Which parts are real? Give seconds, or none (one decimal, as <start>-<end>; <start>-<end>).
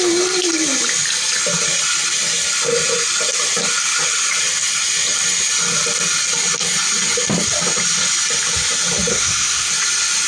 0.0-9.1; 9.7-10.3